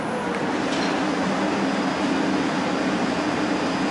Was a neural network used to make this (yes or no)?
no